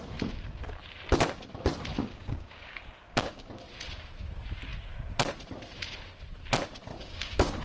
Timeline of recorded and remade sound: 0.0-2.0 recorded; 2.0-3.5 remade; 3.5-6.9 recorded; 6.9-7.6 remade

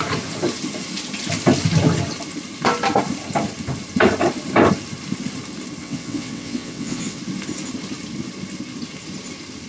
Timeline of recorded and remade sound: 0.0-5.8 recorded; 5.8-7.2 remade; 7.2-9.7 recorded

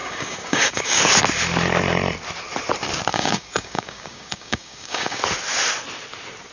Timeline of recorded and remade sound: 0.0-1.0 remade; 1.0-3.1 recorded; 3.1-5.2 remade; 5.2-6.5 recorded

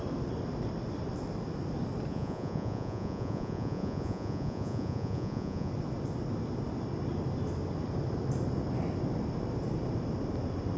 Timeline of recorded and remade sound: 0.0-2.1 recorded; 2.1-5.7 remade; 5.7-10.8 recorded

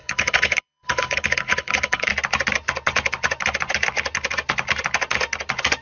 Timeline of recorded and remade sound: 0.0-2.1 remade; 2.1-5.8 recorded